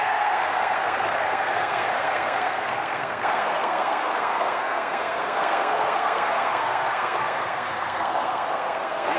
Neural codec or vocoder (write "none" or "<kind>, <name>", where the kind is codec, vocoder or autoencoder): codec, SNAC